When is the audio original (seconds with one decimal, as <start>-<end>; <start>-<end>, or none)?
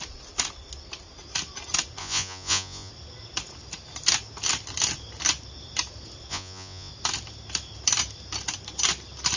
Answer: 0.0-2.0; 2.9-6.3; 6.9-9.4